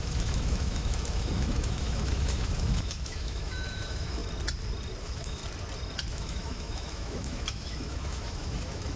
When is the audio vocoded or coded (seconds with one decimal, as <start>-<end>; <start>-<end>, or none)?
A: 0.0-4.2; 5.0-5.4; 6.1-9.0

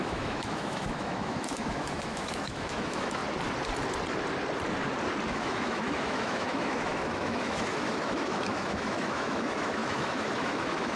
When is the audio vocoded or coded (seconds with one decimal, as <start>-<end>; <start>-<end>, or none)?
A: 0.0-3.2; 5.3-11.0

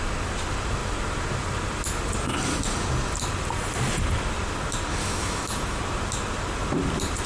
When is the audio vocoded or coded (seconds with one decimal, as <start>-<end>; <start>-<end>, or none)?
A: 5.0-5.8

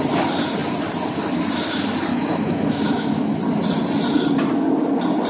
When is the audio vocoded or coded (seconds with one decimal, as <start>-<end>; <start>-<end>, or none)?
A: 2.1-3.4

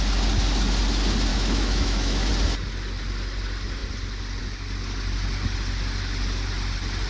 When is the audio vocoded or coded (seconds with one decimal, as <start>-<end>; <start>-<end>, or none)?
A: 1.3-2.3

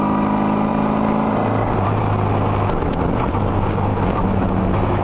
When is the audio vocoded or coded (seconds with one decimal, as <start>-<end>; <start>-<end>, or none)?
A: 3.9-5.0

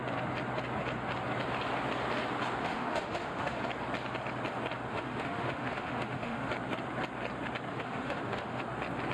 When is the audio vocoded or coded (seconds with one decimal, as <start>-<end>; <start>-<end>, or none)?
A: 2.6-3.6; 4.9-6.5; 7.7-8.6